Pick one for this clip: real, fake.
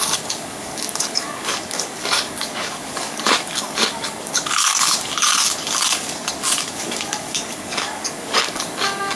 fake